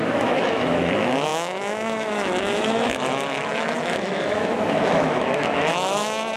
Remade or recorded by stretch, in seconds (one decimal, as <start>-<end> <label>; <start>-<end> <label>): 0.0-6.4 remade